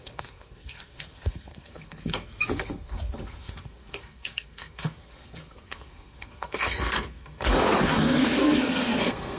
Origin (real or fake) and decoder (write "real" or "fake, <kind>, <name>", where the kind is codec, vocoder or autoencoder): fake, codec, SNAC